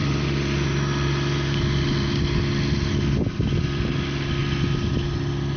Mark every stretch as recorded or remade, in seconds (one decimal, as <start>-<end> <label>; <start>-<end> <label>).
0.0-5.6 recorded